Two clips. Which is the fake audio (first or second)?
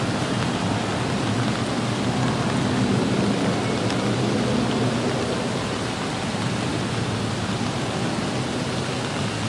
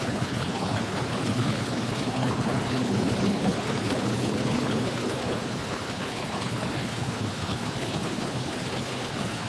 second